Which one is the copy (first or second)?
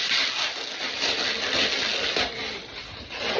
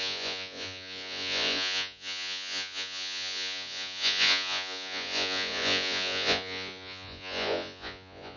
second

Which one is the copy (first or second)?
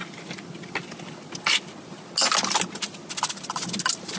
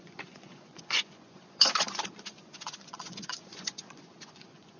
second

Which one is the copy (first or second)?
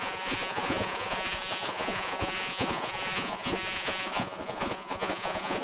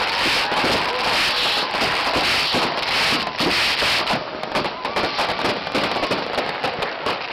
first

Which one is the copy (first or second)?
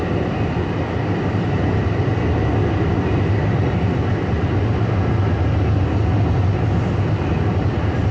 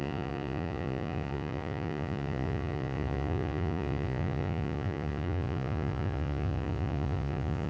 second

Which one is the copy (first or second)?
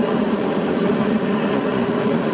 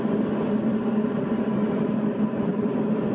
first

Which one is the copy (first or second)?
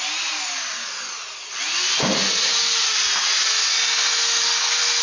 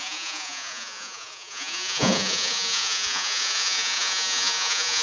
second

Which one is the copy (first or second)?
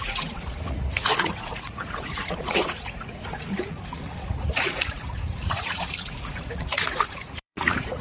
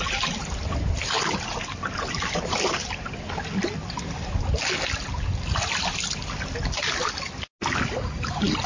first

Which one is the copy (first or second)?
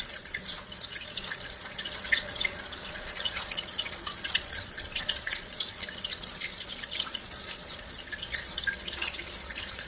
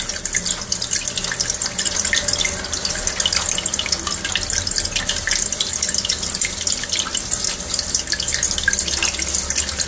first